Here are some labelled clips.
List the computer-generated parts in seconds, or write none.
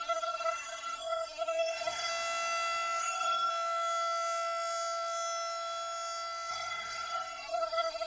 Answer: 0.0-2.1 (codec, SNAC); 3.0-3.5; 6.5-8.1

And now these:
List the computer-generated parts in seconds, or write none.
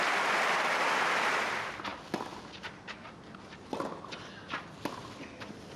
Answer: none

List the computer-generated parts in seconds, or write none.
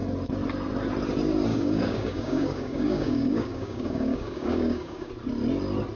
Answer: 1.5-5.1 (codec, DAC)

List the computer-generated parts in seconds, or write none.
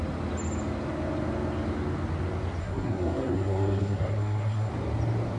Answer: 2.6-4.7 (codec, SNAC)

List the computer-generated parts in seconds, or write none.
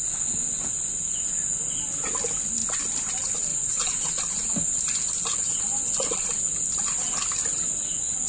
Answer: 3.5-4.5 (vocoder, Vocos)